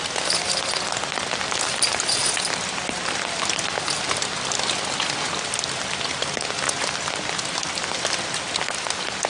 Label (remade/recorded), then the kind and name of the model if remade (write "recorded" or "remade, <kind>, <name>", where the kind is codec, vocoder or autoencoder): recorded